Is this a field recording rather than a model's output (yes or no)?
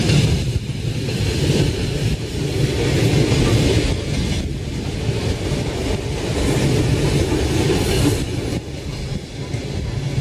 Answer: yes